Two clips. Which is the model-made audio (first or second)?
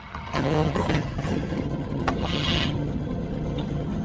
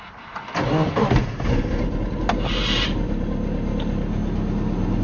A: first